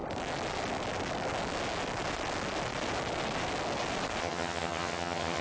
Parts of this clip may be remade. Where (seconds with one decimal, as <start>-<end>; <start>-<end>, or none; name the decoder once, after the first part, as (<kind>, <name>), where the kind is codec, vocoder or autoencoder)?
4.2-5.4 (vocoder, HiFi-GAN)